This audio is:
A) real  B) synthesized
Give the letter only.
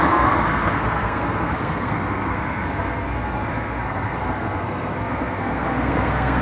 B